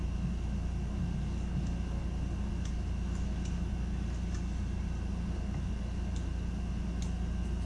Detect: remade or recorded recorded